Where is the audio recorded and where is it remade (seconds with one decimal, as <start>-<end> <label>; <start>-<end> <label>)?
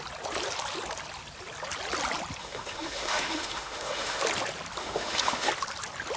0.0-2.4 recorded; 2.4-4.2 remade; 4.2-4.8 recorded; 4.8-5.5 remade; 5.5-6.2 recorded